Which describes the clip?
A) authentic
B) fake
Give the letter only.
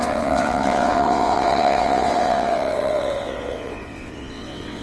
B